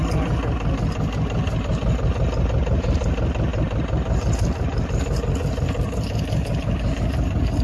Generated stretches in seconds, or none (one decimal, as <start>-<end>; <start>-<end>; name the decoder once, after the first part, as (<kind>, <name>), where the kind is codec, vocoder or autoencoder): none